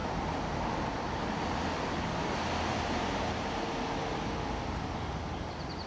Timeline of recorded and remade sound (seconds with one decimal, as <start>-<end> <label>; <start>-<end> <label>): 0.0-0.6 remade; 0.6-2.7 recorded; 2.7-3.7 remade; 3.7-5.9 recorded